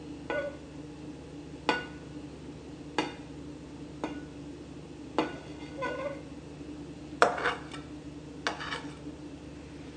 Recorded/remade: recorded